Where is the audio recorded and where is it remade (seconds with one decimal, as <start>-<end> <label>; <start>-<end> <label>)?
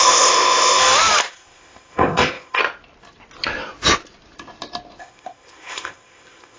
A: 0.0-0.8 remade; 0.8-1.3 recorded; 1.3-2.6 remade; 2.6-5.0 recorded; 5.0-6.6 remade